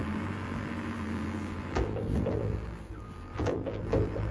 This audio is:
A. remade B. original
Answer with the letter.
A